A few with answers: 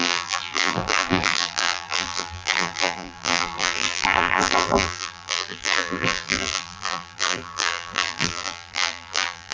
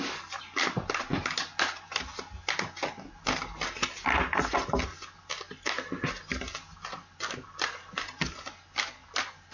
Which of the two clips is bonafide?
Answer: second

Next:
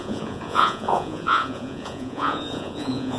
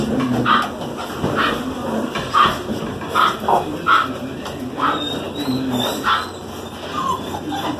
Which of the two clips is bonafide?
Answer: second